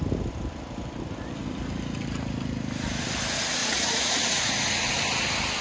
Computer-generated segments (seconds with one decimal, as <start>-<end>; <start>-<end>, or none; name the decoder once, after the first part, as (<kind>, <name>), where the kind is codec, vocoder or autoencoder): 3.6-4.9 (vocoder, Vocos)